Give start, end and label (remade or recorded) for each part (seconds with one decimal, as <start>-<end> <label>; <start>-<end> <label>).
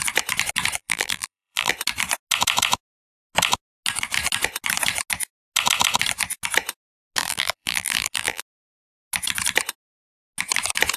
0.0-0.8 recorded; 0.8-1.7 remade; 1.7-7.2 recorded; 7.2-8.4 remade; 8.4-11.0 recorded